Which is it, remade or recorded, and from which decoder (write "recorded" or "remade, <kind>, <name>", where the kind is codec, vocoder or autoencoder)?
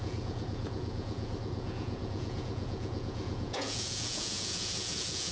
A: remade, vocoder, Vocos